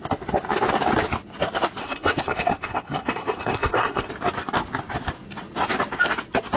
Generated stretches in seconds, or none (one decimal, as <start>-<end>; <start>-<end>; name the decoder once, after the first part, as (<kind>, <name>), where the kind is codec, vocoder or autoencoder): 1.8-4.1 (codec, SNAC)